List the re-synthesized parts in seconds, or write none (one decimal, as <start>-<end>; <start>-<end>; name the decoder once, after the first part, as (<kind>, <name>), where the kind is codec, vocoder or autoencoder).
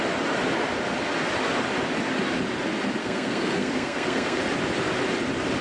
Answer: 3.0-4.4 (codec, SNAC)